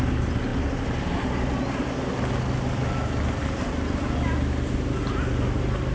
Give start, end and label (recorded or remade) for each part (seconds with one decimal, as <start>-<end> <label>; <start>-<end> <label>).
0.0-5.9 recorded